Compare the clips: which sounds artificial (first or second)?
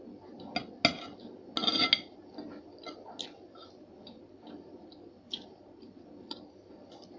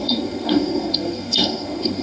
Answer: second